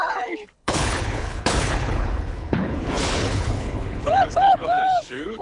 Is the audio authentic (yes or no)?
no